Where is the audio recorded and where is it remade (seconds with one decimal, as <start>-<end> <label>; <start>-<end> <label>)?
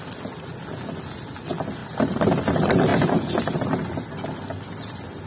0.0-5.3 recorded